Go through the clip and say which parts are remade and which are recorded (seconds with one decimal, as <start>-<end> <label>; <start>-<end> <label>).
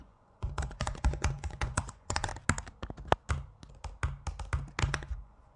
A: 0.0-2.3 remade; 2.3-4.8 recorded; 4.8-5.6 remade